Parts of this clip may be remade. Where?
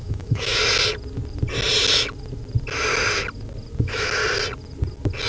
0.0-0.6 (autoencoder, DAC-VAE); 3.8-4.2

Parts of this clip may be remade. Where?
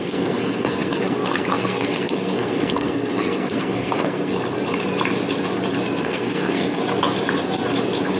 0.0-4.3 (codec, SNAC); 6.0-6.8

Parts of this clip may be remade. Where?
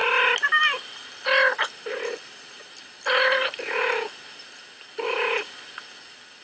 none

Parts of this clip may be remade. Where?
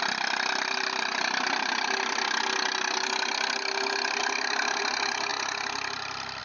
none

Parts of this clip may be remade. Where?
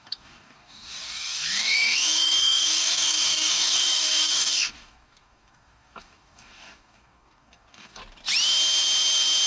0.0-8.0 (codec, DAC)